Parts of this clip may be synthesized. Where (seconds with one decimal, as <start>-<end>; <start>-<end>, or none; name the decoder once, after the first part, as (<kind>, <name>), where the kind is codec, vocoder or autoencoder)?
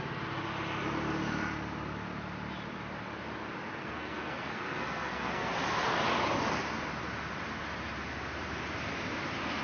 3.8-5.5 (codec, SNAC)